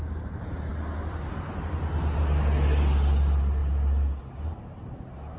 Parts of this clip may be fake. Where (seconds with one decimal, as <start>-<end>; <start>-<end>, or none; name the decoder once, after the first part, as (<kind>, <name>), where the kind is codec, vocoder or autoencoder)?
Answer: none